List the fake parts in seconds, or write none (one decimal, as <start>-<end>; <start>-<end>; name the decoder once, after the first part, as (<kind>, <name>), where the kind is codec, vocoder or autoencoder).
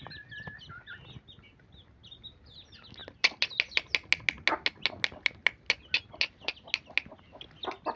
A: none